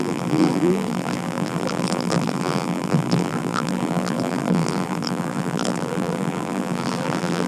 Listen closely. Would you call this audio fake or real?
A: fake